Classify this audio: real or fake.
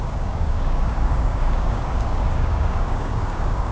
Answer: fake